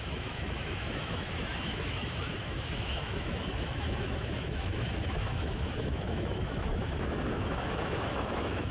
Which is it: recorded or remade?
remade